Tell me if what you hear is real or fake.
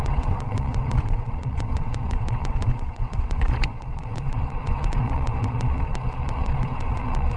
fake